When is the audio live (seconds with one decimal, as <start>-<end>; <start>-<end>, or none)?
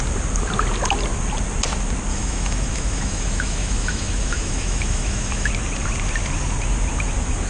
0.0-2.1; 5.5-7.5